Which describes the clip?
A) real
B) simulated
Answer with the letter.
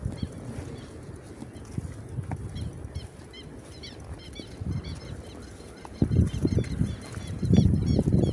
A